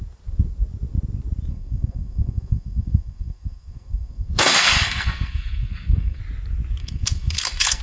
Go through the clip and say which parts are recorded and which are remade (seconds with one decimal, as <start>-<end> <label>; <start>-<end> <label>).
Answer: 0.0-1.5 recorded; 1.5-6.2 remade; 6.2-6.8 recorded; 6.8-7.8 remade

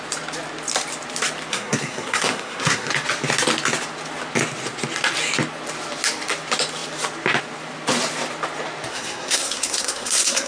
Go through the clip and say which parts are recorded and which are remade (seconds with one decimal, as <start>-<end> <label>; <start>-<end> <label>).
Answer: 0.0-1.5 recorded; 1.5-2.9 remade; 2.9-8.9 recorded; 8.9-10.5 remade